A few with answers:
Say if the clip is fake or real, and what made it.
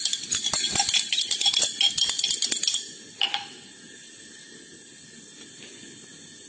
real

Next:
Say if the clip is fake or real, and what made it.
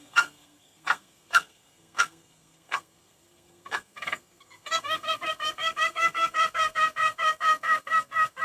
fake, codec, SNAC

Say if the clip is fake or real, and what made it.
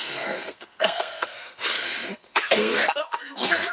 fake, codec, SNAC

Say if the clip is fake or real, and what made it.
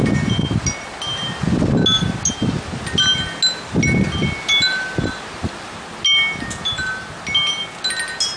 real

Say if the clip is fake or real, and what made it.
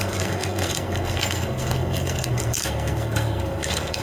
fake, codec, SNAC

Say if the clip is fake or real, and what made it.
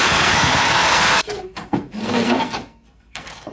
fake, codec, SNAC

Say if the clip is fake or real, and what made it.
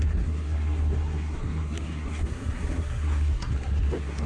fake, codec, SNAC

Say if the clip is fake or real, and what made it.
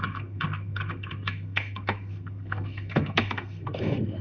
fake, codec, SNAC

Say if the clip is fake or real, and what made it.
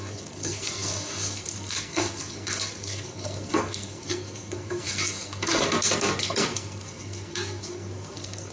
fake, codec, SNAC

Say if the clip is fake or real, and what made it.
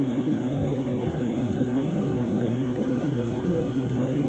fake, codec, SNAC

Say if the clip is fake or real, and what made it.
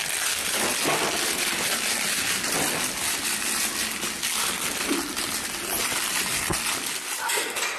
real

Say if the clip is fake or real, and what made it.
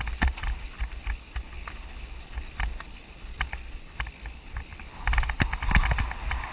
real